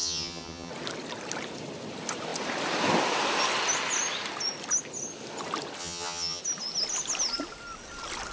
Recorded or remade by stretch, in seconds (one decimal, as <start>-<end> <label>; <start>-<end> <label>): 0.0-0.7 remade; 0.7-5.8 recorded; 5.8-6.4 remade; 6.4-8.3 recorded